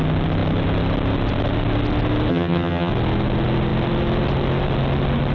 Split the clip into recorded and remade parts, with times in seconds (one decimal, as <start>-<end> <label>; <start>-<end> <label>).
0.0-2.3 recorded; 2.3-2.9 remade; 2.9-5.3 recorded